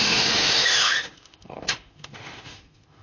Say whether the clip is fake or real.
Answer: fake